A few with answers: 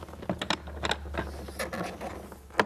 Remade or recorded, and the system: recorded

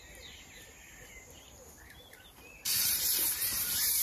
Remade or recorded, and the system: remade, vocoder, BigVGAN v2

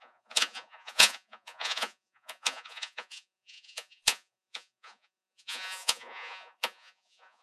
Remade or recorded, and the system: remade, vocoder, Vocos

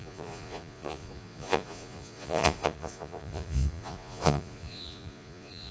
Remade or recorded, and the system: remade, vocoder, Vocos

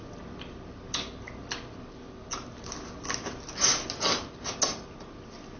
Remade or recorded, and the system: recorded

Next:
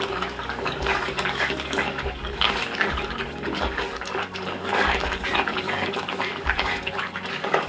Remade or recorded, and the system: remade, codec, DAC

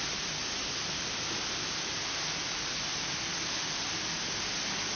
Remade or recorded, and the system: recorded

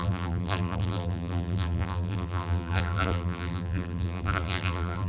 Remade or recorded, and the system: remade, vocoder, BigVGAN v2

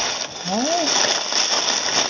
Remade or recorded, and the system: recorded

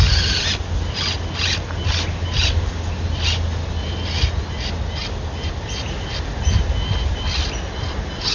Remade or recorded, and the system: recorded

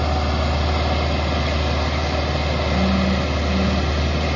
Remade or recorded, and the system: recorded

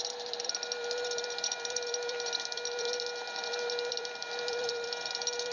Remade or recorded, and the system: remade, vocoder, BigVGAN v2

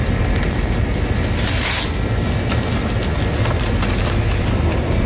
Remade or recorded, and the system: recorded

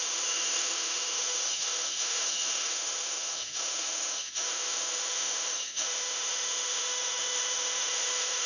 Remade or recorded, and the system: remade, autoencoder, DAC-VAE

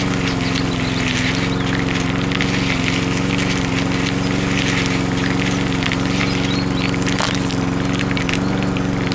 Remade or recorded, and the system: recorded